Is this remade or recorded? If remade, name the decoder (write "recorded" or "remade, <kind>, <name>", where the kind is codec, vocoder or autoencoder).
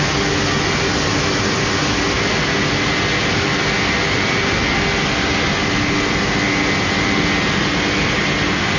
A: recorded